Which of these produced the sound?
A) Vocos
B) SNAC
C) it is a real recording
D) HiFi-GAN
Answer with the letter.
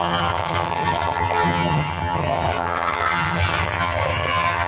D